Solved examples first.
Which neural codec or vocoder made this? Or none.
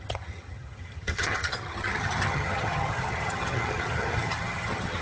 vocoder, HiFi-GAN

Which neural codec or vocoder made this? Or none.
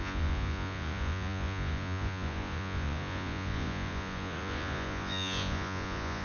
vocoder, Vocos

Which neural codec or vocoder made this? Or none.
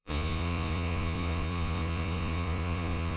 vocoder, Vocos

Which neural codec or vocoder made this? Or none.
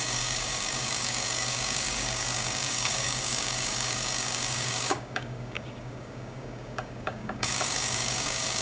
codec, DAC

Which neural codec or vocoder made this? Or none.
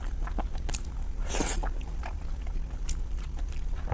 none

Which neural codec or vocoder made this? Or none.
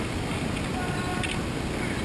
none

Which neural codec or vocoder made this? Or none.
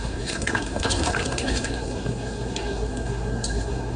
codec, SNAC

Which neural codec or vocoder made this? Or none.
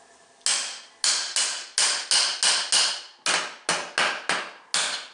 none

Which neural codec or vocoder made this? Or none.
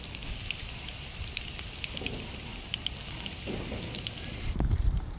none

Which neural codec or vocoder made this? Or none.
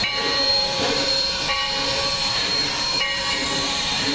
vocoder, BigVGAN v2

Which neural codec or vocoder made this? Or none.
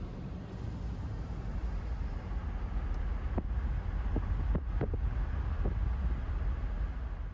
none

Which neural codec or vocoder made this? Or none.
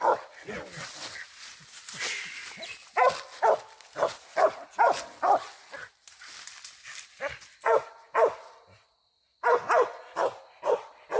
none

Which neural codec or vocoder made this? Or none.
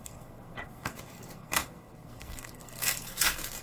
codec, SNAC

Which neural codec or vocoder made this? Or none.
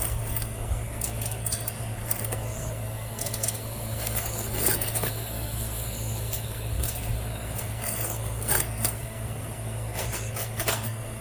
codec, SNAC